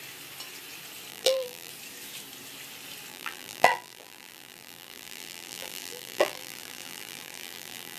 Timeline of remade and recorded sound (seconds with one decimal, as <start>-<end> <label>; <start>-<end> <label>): 0.0-1.1 recorded; 1.1-1.7 remade; 1.7-3.1 recorded; 3.1-8.0 remade